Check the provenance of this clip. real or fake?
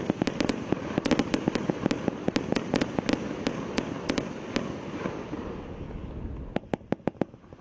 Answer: real